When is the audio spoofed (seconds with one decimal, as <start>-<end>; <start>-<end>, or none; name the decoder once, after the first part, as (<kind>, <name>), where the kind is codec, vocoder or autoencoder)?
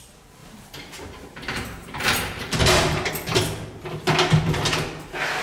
0.4-3.1 (vocoder, BigVGAN v2)